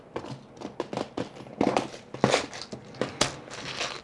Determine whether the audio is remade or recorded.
recorded